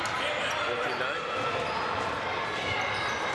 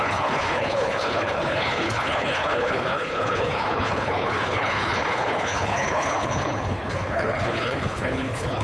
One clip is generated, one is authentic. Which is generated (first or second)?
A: second